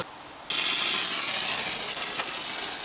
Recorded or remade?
recorded